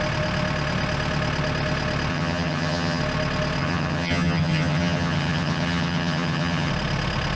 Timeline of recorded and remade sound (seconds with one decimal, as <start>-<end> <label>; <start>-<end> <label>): 0.0-2.1 recorded; 2.1-3.0 remade; 3.0-3.6 recorded; 3.6-6.7 remade; 6.7-7.4 recorded